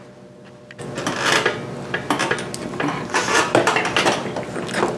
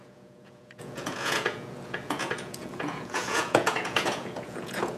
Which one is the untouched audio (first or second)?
first